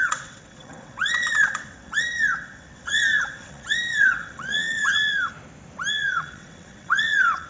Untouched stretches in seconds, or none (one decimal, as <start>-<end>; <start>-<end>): 5.3-5.9